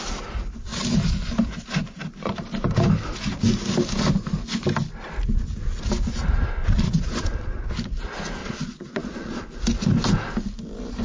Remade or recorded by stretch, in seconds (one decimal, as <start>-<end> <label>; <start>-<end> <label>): 0.0-6.6 recorded; 6.6-7.6 remade; 7.6-8.4 recorded; 8.4-9.4 remade; 9.4-11.0 recorded